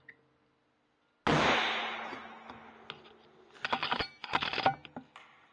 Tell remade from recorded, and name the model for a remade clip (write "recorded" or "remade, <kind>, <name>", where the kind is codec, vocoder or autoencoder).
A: recorded